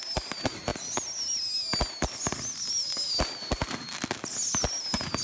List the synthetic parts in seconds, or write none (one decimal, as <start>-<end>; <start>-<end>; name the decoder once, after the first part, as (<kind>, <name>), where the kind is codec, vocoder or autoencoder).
none